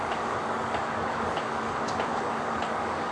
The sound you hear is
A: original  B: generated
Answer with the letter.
B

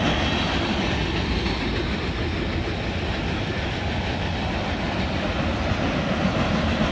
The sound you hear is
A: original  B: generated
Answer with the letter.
A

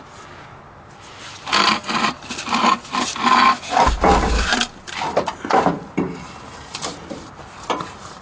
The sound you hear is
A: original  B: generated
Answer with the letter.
A